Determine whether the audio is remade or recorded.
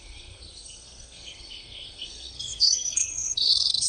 remade